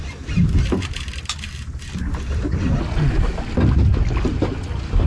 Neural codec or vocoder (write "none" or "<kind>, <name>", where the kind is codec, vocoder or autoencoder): none